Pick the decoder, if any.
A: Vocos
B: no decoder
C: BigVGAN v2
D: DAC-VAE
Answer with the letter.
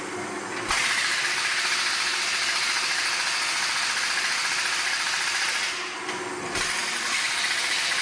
B